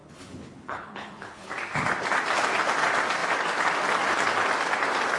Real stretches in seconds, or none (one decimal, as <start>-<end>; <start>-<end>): 1.5-5.2